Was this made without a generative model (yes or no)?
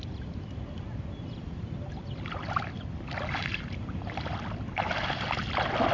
yes